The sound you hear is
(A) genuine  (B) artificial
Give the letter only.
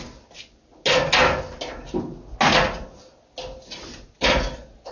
A